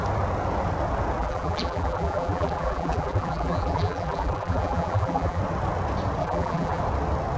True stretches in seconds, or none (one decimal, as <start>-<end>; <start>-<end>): 0.0-1.2; 5.4-6.2; 6.8-7.4